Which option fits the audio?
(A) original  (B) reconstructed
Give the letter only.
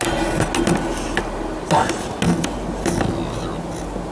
A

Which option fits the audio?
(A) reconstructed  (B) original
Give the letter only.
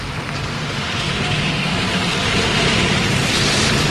A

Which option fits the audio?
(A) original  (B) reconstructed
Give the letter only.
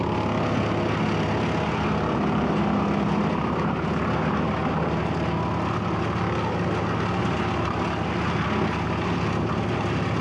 A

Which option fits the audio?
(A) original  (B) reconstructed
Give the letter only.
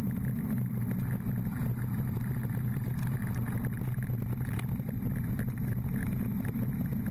A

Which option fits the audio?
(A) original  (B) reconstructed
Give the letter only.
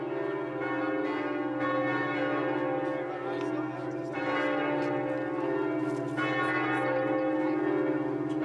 A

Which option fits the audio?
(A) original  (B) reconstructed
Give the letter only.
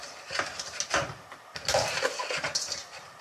A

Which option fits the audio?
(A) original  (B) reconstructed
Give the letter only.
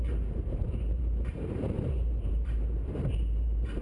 B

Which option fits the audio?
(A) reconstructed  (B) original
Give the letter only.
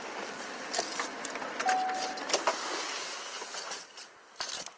B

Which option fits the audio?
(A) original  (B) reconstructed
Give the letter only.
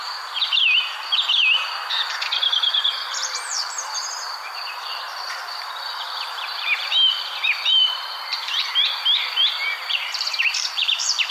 B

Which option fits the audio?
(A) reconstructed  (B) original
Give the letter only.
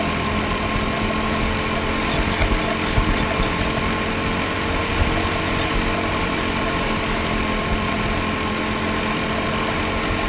B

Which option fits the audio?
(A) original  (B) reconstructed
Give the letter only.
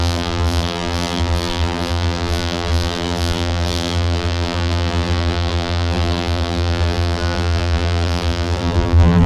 B